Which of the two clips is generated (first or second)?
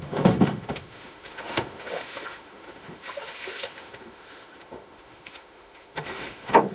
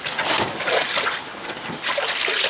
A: first